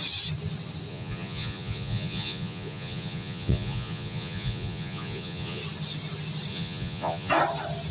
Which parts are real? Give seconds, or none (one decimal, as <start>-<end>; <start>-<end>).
0.0-0.9; 5.6-6.5; 7.3-7.9

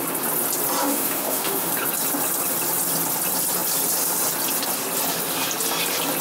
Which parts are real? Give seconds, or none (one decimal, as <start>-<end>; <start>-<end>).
0.0-0.8; 1.7-6.2

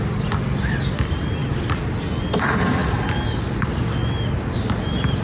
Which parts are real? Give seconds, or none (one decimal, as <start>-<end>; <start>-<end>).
0.0-5.2

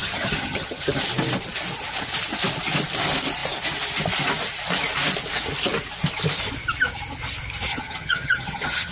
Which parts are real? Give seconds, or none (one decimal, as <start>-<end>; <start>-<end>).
1.0-7.7

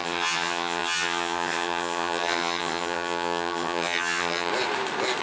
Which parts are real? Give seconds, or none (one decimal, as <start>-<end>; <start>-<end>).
4.5-5.2